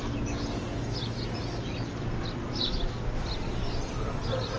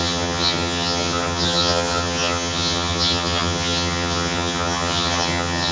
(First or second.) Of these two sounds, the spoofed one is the second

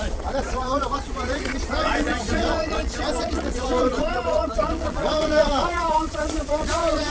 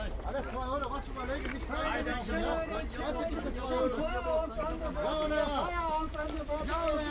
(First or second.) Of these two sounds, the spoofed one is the first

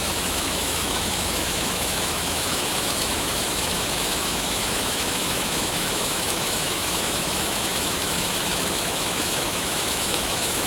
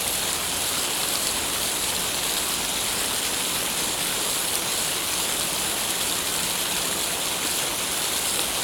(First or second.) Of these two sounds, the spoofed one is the first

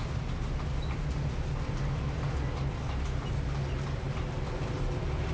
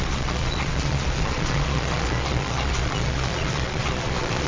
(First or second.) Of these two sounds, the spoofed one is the second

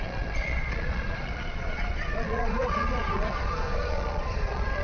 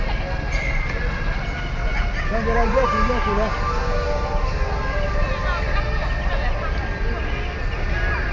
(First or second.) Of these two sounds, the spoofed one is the first